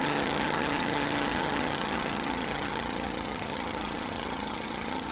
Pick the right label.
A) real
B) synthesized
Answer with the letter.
B